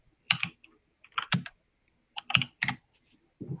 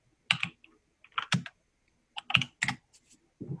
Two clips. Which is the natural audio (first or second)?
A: second